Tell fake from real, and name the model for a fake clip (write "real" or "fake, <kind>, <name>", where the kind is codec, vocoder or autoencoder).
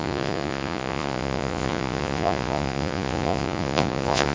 fake, vocoder, Vocos